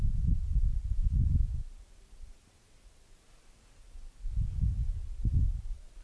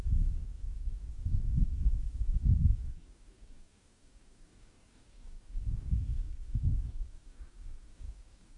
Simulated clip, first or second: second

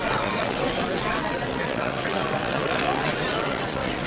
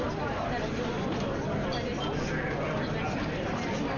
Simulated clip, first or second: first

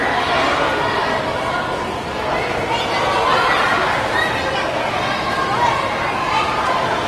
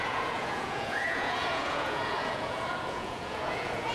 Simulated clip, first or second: second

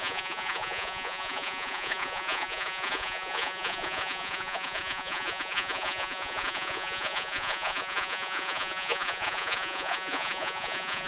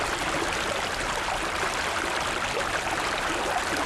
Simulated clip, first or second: first